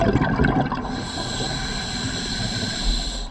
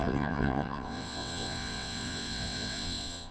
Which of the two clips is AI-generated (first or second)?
second